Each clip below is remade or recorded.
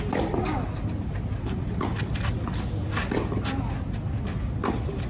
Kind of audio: recorded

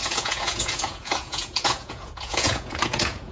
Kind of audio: remade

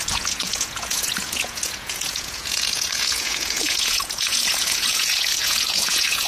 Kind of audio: remade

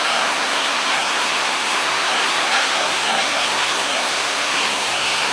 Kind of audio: remade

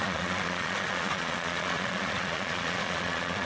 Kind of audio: remade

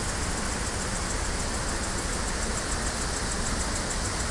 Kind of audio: recorded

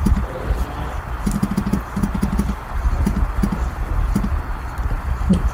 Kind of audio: recorded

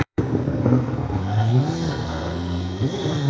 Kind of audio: remade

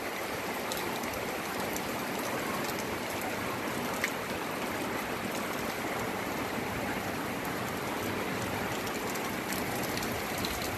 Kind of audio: recorded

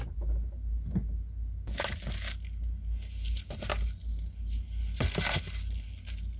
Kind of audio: recorded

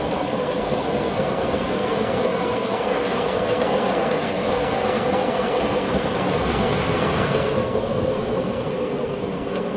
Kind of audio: remade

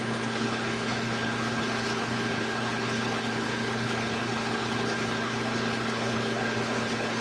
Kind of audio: remade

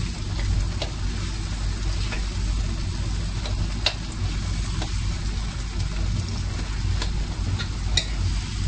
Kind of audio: recorded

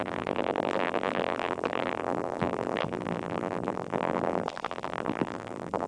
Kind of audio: remade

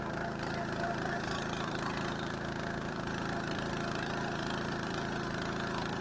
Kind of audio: remade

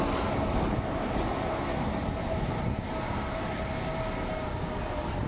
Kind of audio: recorded